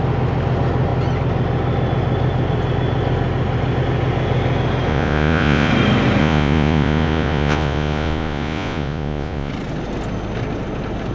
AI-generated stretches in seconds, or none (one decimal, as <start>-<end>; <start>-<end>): 4.9-5.7; 6.2-9.5